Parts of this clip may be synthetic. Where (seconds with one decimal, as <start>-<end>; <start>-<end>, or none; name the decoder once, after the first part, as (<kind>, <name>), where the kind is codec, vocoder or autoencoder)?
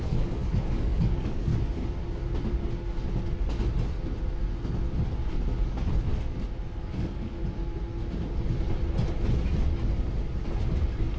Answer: 0.0-1.5 (codec, DAC); 5.6-6.1; 6.8-7.4